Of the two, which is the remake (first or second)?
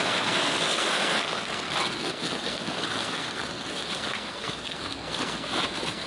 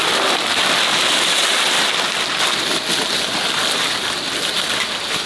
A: first